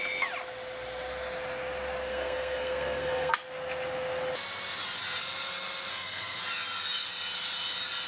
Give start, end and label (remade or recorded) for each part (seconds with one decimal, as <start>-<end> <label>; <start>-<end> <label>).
0.0-2.1 recorded; 2.1-3.3 remade; 3.3-5.9 recorded; 5.9-6.4 remade; 6.4-8.1 recorded